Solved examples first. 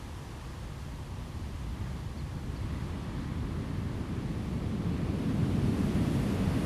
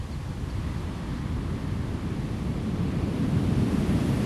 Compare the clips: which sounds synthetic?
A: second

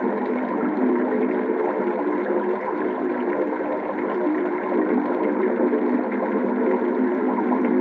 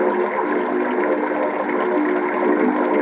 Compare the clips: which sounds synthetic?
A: first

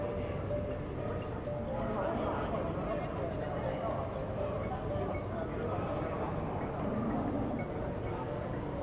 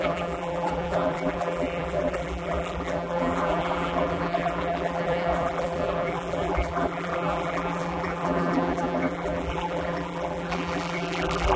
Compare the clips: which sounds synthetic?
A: second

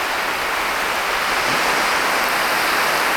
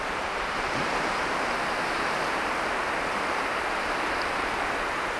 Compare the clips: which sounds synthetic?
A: second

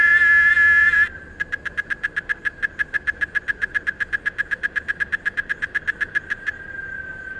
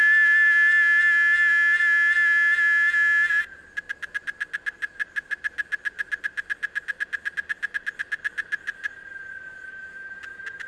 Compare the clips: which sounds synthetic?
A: first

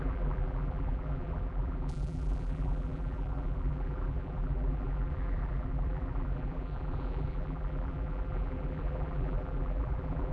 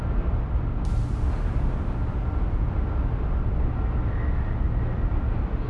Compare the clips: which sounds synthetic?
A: first